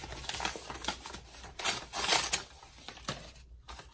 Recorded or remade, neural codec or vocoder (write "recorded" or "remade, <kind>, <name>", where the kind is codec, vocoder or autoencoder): recorded